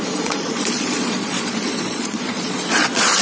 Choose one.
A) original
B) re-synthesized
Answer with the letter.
B